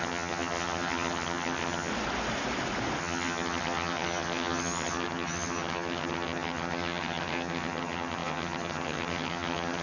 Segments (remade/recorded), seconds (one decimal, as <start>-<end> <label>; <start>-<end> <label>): 0.0-1.9 remade; 1.9-3.0 recorded; 3.0-9.8 remade